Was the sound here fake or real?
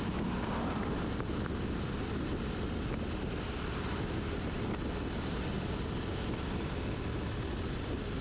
real